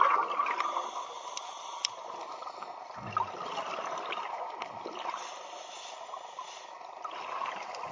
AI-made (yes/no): no